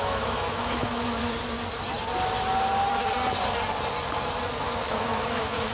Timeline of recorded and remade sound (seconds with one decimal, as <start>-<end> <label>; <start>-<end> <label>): 0.0-1.2 remade; 1.2-4.6 recorded; 4.6-5.7 remade